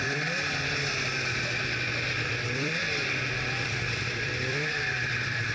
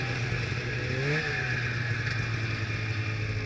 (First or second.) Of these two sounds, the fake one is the first